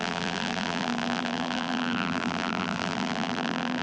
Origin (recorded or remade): remade